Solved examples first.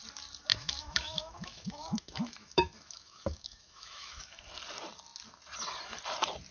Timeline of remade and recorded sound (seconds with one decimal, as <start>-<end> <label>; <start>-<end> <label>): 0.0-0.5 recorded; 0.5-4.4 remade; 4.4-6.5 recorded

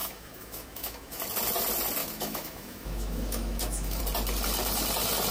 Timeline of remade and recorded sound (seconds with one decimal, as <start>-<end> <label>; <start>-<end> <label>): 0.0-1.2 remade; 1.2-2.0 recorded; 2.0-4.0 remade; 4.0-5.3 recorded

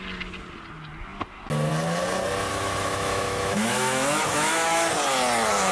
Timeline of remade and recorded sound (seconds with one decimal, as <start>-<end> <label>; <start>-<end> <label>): 0.0-2.5 recorded; 2.5-4.9 remade; 4.9-5.7 recorded

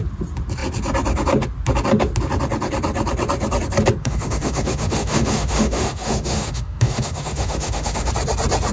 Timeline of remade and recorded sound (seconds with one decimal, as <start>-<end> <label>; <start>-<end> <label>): 0.0-4.0 recorded; 4.0-8.1 remade; 8.1-8.7 recorded

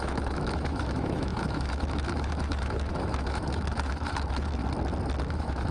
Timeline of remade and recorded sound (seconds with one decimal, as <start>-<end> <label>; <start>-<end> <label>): 0.0-4.6 remade; 4.6-5.2 recorded; 5.2-5.7 remade

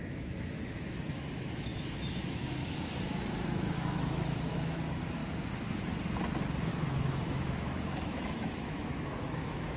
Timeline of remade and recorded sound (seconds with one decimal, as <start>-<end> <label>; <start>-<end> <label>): 0.0-5.2 remade; 5.2-6.7 recorded; 6.7-9.8 remade

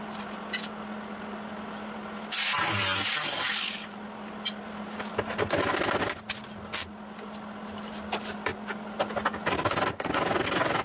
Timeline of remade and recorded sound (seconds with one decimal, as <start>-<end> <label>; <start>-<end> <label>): 0.0-10.8 recorded